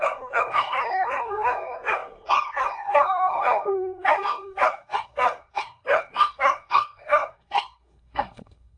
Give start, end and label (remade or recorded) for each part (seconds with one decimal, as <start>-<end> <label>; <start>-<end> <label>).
0.0-8.8 remade